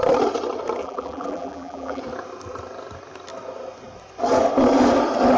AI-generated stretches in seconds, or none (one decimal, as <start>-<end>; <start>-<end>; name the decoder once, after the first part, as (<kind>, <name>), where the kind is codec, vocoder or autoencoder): 0.8-2.0 (vocoder, BigVGAN v2)